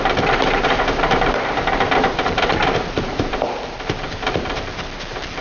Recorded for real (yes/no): no